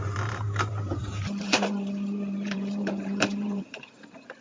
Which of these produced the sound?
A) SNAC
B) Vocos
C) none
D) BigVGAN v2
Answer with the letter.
D